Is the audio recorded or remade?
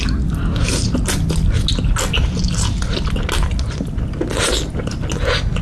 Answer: recorded